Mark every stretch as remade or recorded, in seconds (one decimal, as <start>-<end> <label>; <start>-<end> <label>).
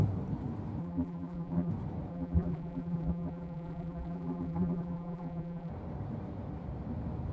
0.0-0.8 recorded; 0.8-1.7 remade; 1.7-2.1 recorded; 2.1-5.7 remade; 5.7-7.3 recorded